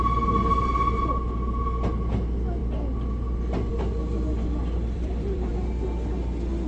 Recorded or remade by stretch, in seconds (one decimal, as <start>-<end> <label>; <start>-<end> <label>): 0.0-4.3 recorded; 4.3-5.5 remade; 5.5-6.7 recorded

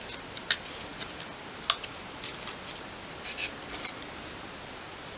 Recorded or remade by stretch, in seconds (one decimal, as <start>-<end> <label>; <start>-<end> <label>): 0.0-5.2 recorded